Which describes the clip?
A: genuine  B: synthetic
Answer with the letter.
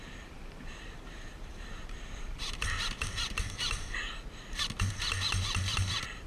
B